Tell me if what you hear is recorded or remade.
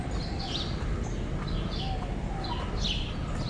recorded